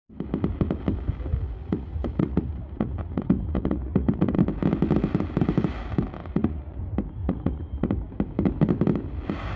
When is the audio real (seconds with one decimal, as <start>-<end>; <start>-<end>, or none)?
0.0-1.6; 4.4-6.2; 6.8-7.2; 7.9-9.6